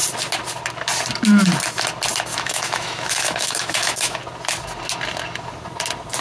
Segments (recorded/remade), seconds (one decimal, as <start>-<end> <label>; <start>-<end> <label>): 0.0-2.3 recorded; 2.3-4.2 remade; 4.2-6.2 recorded